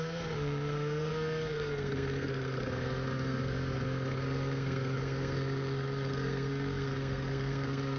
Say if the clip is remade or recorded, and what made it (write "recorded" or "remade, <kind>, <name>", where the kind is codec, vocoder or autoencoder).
remade, codec, SNAC